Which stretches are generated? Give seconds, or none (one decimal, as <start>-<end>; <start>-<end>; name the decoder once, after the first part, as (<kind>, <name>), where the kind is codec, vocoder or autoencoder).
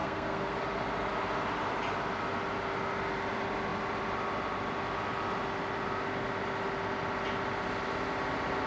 0.0-0.5 (codec, SNAC)